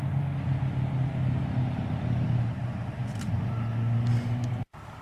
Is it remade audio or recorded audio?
recorded